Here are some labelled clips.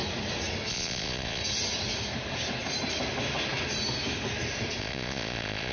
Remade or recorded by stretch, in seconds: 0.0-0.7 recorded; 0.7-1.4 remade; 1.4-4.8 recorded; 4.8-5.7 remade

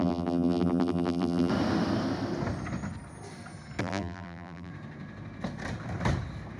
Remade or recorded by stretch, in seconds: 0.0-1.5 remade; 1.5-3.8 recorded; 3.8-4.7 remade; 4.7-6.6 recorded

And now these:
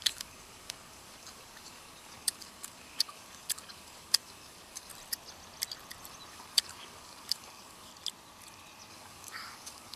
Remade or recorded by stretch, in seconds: 0.0-4.9 remade; 4.9-6.3 recorded; 6.3-7.9 remade; 7.9-8.9 recorded; 8.9-9.9 remade

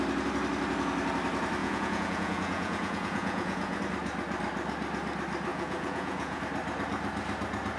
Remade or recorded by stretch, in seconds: 0.0-1.6 recorded; 1.6-3.8 remade; 3.8-5.5 recorded; 5.5-6.4 remade; 6.4-7.8 recorded

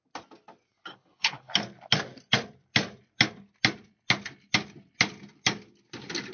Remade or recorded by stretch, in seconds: 0.0-0.9 recorded; 0.9-1.5 remade; 1.5-6.3 recorded

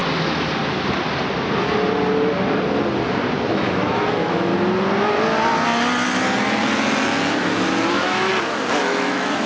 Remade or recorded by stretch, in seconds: 0.0-3.5 recorded; 3.5-4.5 remade; 4.5-7.9 recorded; 7.9-8.3 remade; 8.3-8.8 recorded; 8.8-9.5 remade

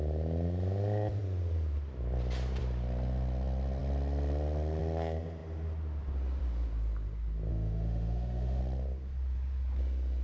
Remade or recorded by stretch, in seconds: 0.0-7.5 recorded; 7.5-8.6 remade; 8.6-10.2 recorded

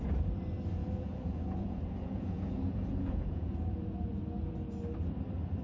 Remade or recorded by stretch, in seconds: 0.0-0.8 recorded; 0.8-4.2 remade; 4.2-5.6 recorded